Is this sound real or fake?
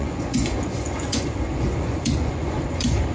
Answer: fake